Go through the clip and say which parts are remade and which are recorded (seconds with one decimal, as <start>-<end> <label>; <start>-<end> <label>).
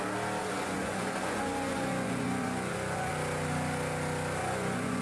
0.0-0.4 recorded; 0.4-3.1 remade; 3.1-4.4 recorded; 4.4-5.0 remade